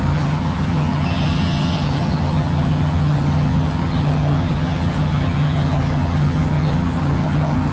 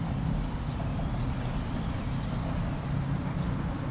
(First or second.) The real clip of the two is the second